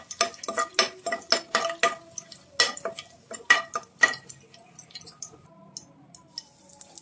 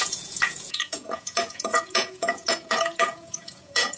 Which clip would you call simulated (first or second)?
second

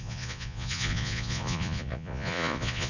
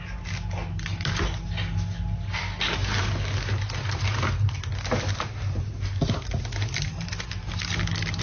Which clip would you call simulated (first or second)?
first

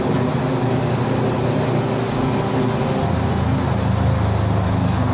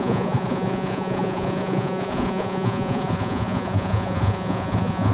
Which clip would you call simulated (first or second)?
second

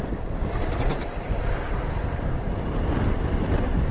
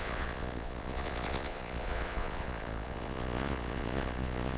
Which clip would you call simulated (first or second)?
second